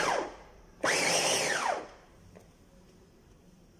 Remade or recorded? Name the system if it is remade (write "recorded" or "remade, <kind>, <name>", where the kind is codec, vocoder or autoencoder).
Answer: remade, vocoder, BigVGAN v2